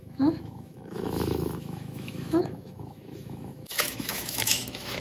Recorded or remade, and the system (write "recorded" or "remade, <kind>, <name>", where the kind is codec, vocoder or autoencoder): remade, autoencoder, DAC-VAE